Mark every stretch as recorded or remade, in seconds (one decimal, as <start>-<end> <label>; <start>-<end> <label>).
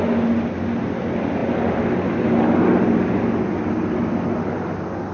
0.0-5.1 recorded